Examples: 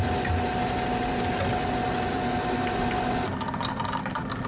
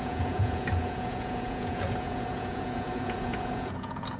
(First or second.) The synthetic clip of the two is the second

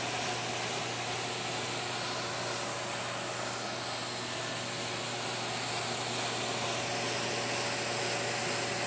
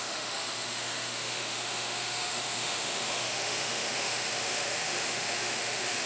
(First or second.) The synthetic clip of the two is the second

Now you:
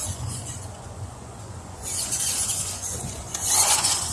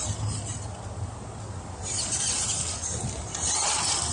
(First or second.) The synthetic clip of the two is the first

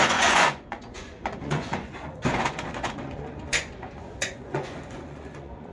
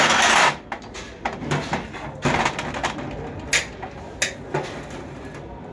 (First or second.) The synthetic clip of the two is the first